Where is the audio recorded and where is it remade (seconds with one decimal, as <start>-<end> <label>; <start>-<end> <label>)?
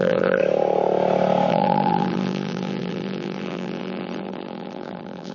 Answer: 0.0-0.4 remade; 0.4-1.5 recorded; 1.5-5.3 remade